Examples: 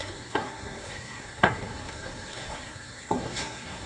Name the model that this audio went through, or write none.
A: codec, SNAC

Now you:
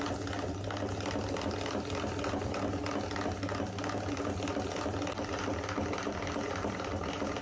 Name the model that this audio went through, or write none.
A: none